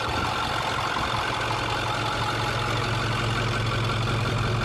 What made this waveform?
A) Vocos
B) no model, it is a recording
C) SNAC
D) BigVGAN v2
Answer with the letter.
B